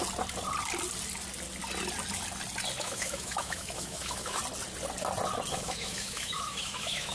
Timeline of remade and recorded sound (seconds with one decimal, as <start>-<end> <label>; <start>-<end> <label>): 0.0-2.8 recorded; 2.8-4.4 remade; 4.4-5.5 recorded; 5.5-7.1 remade